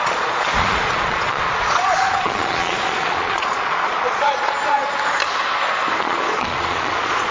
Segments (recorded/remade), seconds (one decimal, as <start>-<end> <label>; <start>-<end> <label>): 0.0-4.8 remade; 4.8-6.0 recorded; 6.0-7.3 remade